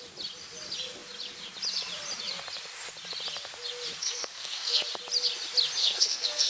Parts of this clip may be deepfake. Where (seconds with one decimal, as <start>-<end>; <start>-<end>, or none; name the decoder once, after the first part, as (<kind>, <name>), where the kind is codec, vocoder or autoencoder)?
4.0-4.8 (codec, SNAC); 5.8-6.5